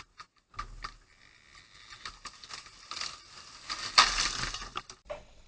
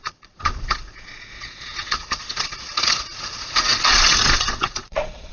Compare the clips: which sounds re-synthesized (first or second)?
second